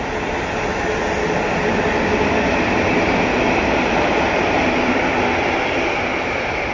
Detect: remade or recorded recorded